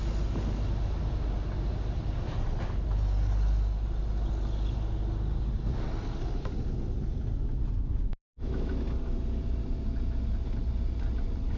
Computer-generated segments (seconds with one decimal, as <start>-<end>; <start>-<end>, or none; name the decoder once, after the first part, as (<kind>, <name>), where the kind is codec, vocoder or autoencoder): 8.1-8.7 (autoencoder, DAC-VAE)